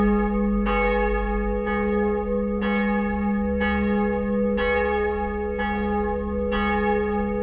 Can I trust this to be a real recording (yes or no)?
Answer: yes